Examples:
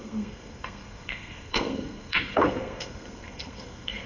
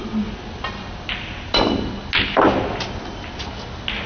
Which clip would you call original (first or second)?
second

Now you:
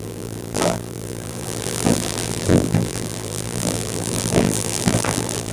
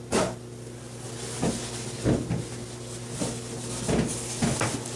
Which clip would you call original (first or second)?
second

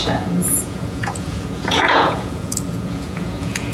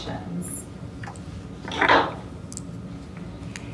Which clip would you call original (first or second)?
second